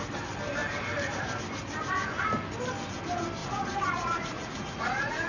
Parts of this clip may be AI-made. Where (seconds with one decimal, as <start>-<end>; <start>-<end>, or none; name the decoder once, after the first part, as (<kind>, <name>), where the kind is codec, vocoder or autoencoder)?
3.4-5.3 (vocoder, Vocos)